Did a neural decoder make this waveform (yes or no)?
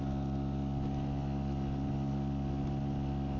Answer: no